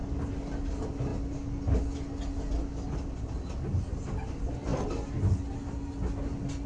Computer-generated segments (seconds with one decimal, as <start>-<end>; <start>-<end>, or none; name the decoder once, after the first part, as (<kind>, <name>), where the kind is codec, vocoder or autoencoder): none